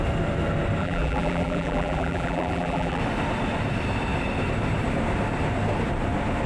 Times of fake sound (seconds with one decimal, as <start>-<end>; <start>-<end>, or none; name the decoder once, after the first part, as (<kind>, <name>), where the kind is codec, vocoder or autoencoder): 0.8-3.0 (vocoder, BigVGAN v2)